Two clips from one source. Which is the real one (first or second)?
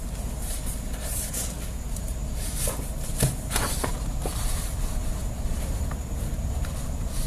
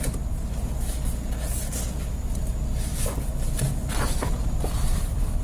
second